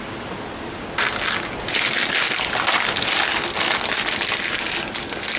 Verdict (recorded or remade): recorded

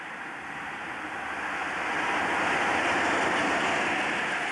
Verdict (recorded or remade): recorded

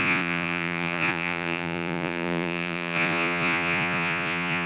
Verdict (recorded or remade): remade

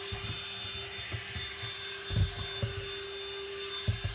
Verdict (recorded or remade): recorded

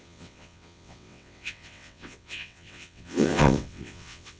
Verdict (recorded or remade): remade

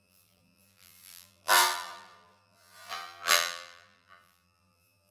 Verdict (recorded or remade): remade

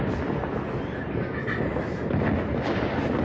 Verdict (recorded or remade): recorded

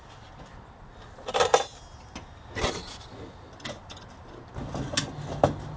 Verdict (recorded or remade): recorded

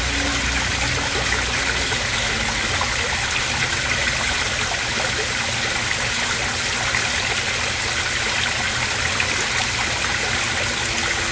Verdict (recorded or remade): recorded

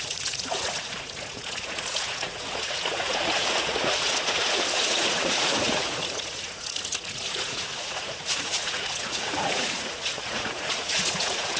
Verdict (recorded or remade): remade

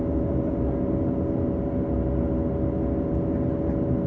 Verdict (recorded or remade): recorded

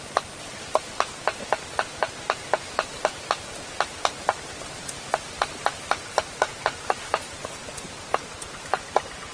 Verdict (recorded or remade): recorded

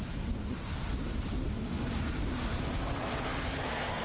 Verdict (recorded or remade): recorded